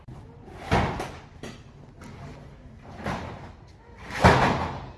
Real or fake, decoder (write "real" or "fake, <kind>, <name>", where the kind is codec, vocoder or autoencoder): real